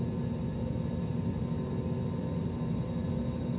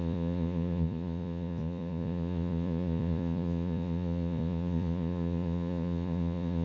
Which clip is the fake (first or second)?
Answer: second